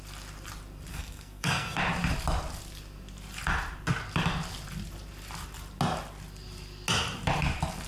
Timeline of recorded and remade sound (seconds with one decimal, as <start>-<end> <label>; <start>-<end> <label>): 0.0-0.9 recorded; 0.9-1.8 remade; 1.8-7.9 recorded